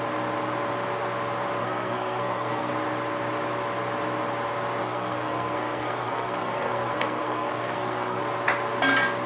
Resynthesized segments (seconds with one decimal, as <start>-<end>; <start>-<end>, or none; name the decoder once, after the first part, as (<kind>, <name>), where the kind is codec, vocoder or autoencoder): 1.6-2.7 (codec, SNAC); 4.8-8.2